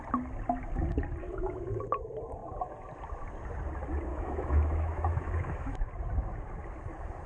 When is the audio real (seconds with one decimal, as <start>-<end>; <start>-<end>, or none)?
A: 0.0-1.2; 1.8-4.1; 5.9-7.3